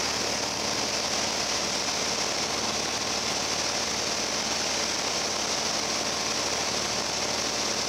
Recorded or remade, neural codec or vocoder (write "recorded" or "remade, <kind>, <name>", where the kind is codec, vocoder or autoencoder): recorded